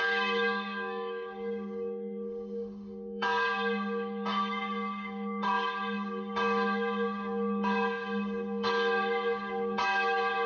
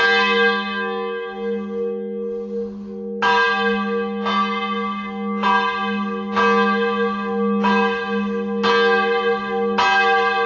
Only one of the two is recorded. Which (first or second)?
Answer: second